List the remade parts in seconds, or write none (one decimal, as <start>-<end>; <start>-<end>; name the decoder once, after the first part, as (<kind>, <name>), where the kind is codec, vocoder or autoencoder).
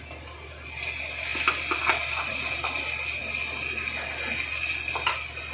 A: none